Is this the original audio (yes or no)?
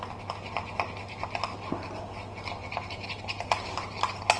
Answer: yes